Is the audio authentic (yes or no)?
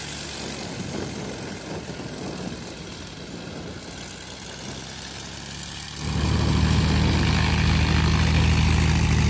yes